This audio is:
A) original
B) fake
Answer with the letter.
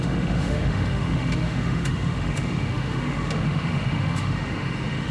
B